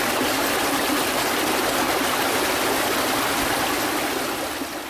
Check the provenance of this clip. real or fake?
real